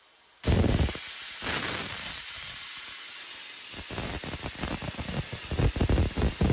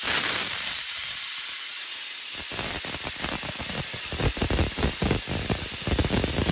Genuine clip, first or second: first